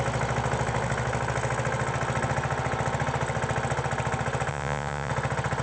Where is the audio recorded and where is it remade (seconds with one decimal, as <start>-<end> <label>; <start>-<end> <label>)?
0.0-4.5 recorded; 4.5-5.1 remade; 5.1-5.6 recorded